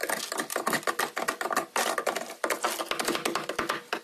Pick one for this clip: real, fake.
real